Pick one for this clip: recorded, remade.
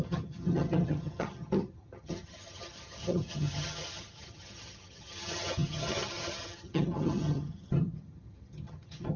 remade